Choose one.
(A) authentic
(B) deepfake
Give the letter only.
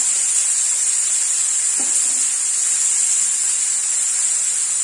A